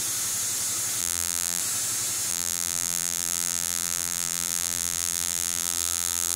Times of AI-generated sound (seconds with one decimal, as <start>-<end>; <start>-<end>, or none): 1.0-1.6; 2.3-6.4